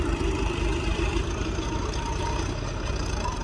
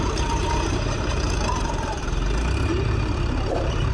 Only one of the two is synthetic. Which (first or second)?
second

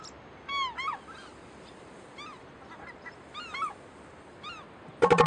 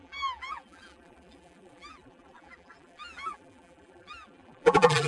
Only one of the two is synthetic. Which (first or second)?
second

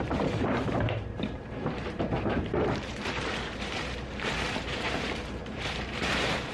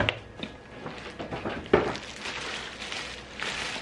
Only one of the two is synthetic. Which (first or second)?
first